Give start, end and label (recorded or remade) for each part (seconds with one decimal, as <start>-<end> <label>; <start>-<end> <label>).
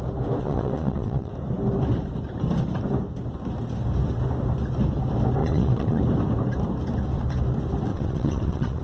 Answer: 0.0-0.4 recorded; 0.4-1.3 remade; 1.3-5.4 recorded; 5.4-6.0 remade; 6.0-7.9 recorded; 7.9-8.8 remade